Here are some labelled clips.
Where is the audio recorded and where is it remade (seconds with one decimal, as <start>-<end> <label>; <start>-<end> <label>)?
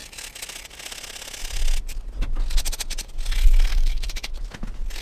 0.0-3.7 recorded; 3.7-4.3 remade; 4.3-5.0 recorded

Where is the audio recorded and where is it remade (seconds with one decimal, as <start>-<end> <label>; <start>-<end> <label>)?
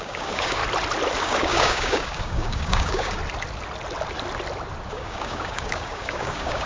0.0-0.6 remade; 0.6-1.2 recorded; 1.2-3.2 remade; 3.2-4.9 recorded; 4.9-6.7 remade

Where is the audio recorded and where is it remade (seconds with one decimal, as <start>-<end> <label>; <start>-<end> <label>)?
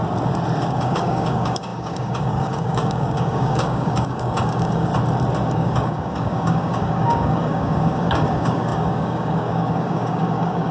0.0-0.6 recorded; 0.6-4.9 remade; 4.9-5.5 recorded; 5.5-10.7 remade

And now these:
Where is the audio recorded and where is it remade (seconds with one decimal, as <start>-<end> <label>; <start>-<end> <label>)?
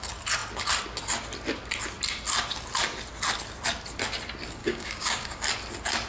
0.0-4.6 recorded; 4.6-5.4 remade; 5.4-6.1 recorded